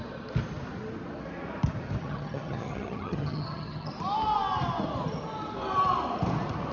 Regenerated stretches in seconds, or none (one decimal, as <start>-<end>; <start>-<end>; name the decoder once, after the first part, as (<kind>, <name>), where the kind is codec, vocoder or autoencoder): 2.0-3.9 (vocoder, HiFi-GAN)